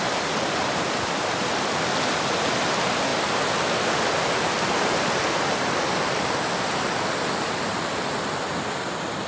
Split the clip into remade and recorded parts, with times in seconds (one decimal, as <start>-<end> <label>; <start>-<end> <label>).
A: 0.0-9.3 recorded